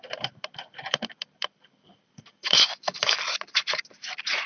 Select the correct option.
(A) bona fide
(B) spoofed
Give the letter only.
A